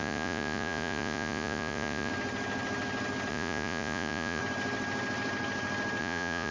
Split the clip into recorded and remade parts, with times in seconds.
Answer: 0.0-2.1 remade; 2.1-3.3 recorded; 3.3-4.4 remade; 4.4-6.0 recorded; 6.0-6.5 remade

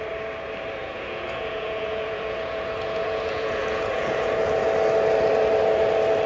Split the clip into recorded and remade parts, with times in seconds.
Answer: 0.0-0.8 recorded; 0.8-4.6 remade; 4.6-6.3 recorded

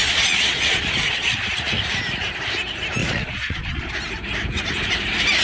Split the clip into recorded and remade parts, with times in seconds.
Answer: 0.0-1.3 remade; 1.3-3.0 recorded; 3.0-3.9 remade; 3.9-5.4 recorded

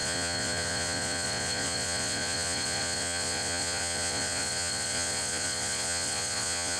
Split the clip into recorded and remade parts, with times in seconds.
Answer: 0.0-6.8 remade

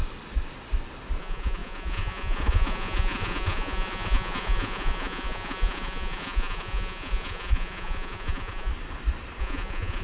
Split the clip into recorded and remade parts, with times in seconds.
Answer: 0.0-1.2 recorded; 1.2-8.7 remade; 8.7-9.4 recorded; 9.4-10.0 remade